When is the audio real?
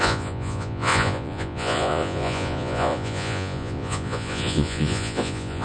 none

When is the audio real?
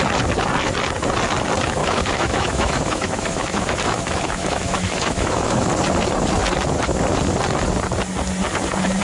0.0-1.8; 5.7-9.0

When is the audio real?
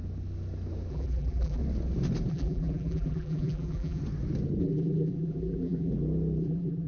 0.0-0.9; 1.6-2.3; 4.0-4.6; 5.9-6.4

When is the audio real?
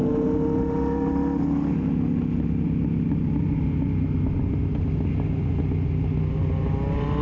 0.0-7.2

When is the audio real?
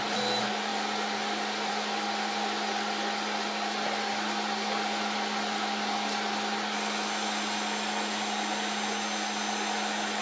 0.0-10.2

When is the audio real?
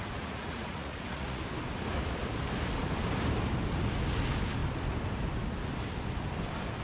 1.4-6.8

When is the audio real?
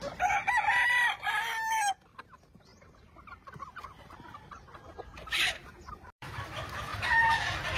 0.0-2.7; 4.4-5.1; 6.3-6.9